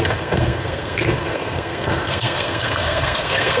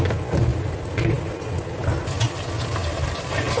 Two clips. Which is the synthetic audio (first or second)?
first